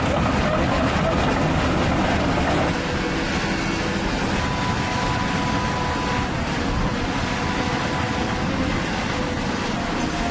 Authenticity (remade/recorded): recorded